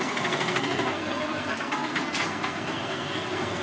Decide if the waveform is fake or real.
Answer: fake